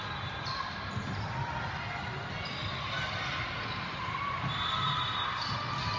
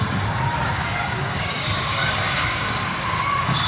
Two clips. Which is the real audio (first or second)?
first